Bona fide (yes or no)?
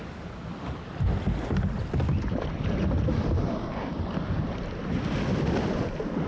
yes